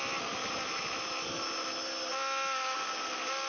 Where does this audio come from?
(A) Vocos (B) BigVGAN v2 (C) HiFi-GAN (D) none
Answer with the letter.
D